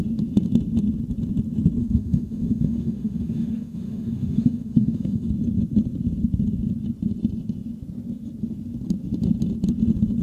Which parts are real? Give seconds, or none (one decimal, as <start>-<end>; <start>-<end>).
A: 0.0-1.8; 5.3-10.2